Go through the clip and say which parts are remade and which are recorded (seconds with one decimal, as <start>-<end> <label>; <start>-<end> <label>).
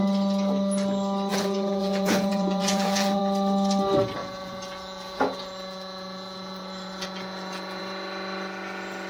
0.0-1.3 recorded; 1.3-3.2 remade; 3.2-4.2 recorded; 4.2-7.8 remade; 7.8-9.1 recorded